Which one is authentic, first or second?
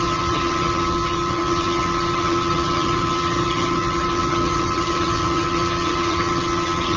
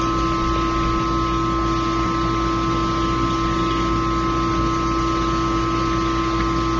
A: second